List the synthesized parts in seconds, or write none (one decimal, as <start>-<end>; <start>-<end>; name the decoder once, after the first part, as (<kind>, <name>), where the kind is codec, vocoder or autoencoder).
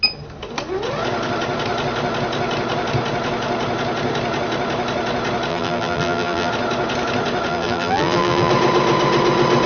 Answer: 5.5-6.5 (vocoder, BigVGAN v2); 7.5-8.5